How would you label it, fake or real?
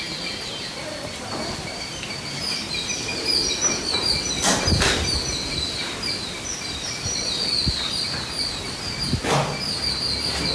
real